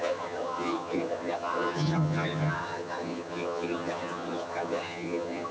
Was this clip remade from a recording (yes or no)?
yes